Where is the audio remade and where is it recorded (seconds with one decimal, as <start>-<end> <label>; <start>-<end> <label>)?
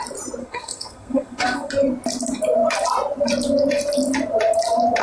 0.0-0.4 recorded; 0.4-1.7 remade; 1.7-5.0 recorded